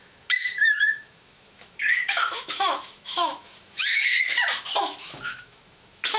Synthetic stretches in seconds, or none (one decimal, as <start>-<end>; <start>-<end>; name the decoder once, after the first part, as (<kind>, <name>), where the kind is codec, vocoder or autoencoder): 0.0-4.1 (autoencoder, DAC-VAE); 4.8-6.2